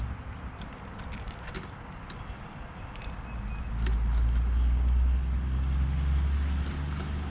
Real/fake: real